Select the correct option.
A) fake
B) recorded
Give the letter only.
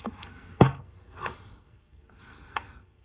A